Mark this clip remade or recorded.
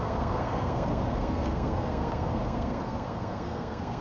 remade